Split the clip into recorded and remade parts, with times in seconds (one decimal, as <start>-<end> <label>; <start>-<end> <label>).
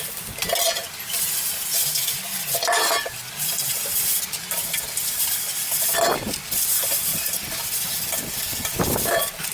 0.0-9.5 recorded